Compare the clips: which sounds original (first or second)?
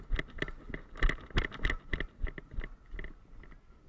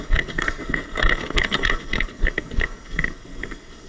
first